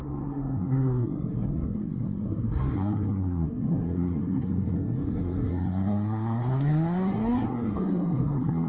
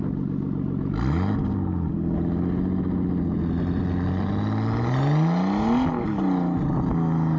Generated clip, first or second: first